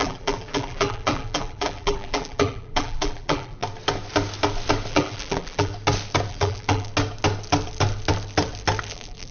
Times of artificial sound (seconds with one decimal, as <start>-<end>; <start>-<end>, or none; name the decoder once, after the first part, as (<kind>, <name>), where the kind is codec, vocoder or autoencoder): 0.0-3.6 (vocoder, BigVGAN v2); 4.9-5.7; 6.3-6.9; 8.9-9.3